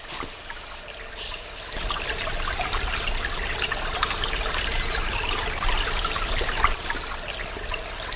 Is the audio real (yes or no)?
yes